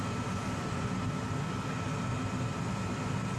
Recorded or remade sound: recorded